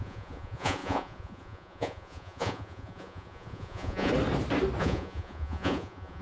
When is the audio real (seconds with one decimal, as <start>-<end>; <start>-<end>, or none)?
4.1-4.8